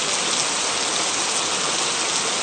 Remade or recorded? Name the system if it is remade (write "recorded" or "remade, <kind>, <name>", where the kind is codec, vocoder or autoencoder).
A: recorded